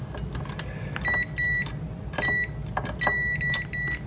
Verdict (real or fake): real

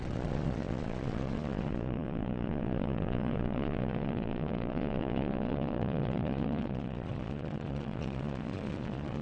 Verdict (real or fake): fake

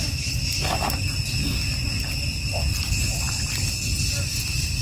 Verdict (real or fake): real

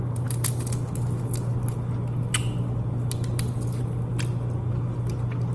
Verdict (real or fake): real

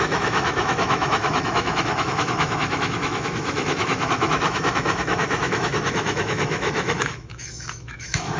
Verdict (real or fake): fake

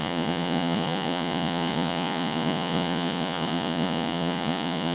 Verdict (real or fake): fake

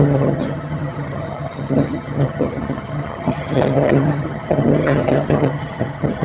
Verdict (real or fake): fake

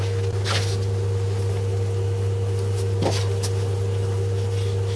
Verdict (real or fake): real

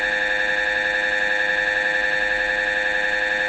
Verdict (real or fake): real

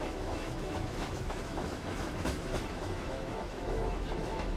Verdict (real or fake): fake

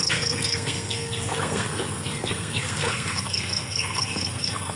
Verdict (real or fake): fake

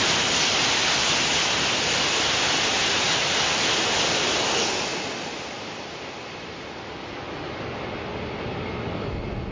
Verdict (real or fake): real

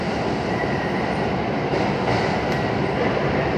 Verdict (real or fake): real